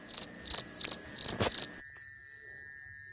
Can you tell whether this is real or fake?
real